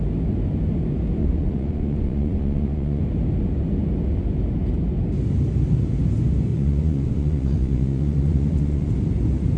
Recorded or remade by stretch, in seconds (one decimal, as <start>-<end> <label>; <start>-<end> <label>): 0.0-1.2 recorded; 1.2-3.0 remade; 3.0-6.5 recorded; 6.5-8.9 remade; 8.9-9.6 recorded